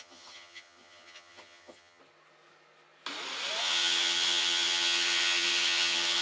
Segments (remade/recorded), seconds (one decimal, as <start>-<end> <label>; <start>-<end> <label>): 0.0-2.0 remade; 2.0-3.6 recorded; 3.6-6.2 remade